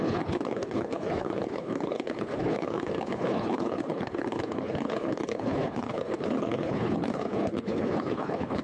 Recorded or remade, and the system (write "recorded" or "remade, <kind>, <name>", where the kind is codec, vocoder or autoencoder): remade, codec, HILCodec